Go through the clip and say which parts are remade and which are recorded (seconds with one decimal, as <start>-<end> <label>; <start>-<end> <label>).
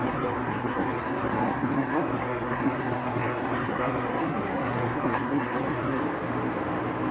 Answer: 0.0-6.0 remade; 6.0-7.1 recorded